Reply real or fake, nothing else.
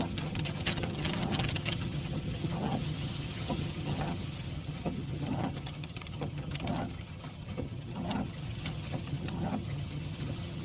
fake